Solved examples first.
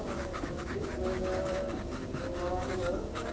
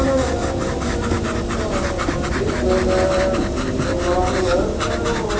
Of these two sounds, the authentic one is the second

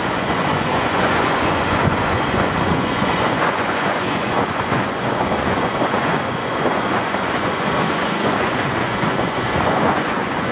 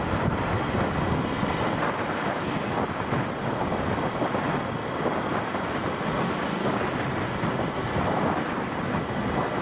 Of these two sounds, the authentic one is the second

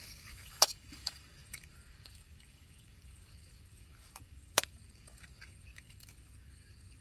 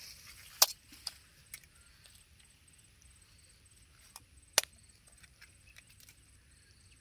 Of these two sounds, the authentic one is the second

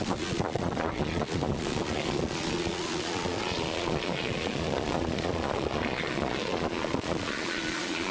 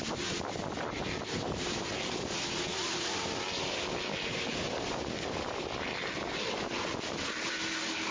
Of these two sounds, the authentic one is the second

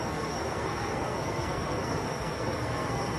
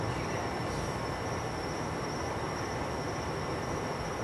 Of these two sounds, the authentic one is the second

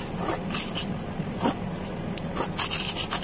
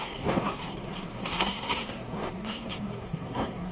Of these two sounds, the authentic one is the first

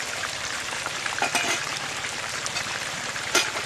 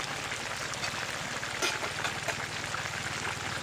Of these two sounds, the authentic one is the second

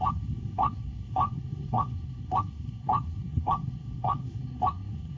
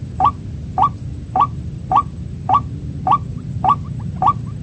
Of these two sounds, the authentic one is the second